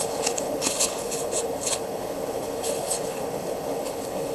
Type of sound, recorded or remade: remade